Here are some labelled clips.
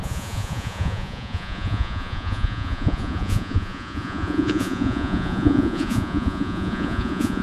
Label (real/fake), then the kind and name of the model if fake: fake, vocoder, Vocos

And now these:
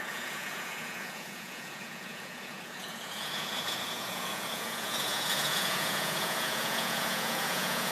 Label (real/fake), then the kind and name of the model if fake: fake, vocoder, Vocos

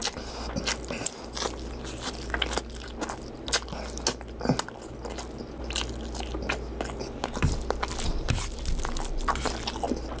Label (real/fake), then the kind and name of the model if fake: real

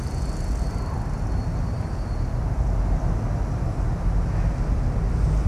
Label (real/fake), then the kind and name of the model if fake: real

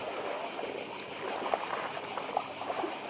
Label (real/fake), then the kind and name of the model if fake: real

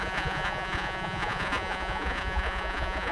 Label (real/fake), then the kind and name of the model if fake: fake, vocoder, Vocos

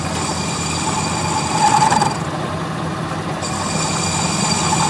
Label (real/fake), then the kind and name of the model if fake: real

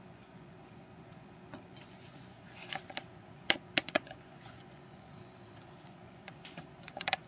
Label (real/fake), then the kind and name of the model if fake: fake, vocoder, Vocos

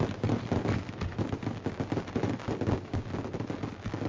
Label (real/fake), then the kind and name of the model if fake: real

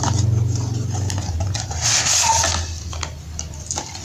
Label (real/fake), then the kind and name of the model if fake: real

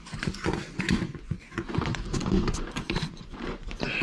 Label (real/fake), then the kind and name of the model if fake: fake, vocoder, Vocos